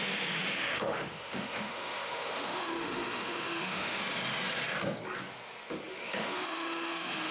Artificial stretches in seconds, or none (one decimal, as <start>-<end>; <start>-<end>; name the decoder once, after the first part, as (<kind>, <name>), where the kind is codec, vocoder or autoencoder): 0.0-4.0 (autoencoder, DAC-VAE); 5.9-7.3